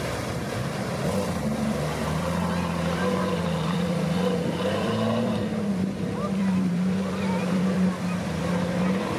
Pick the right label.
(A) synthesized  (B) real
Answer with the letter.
A